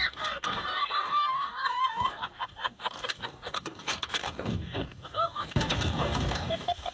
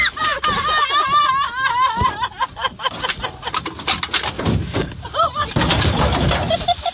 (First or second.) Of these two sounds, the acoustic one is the second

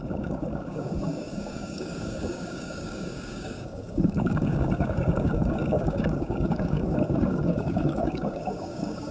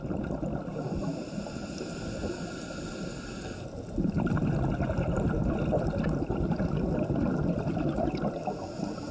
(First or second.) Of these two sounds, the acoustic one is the second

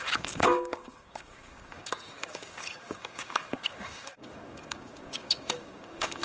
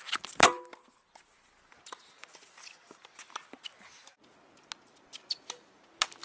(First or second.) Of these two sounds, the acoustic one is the second